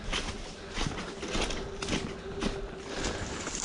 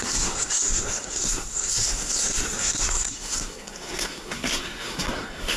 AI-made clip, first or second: second